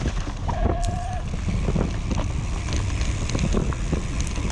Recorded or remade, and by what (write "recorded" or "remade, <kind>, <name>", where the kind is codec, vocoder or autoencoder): recorded